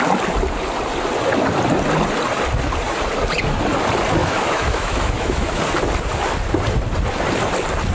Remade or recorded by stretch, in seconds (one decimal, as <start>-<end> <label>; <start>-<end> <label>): 0.0-4.2 recorded; 4.2-5.6 remade; 5.6-7.9 recorded